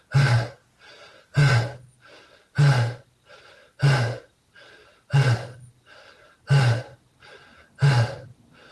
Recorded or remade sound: recorded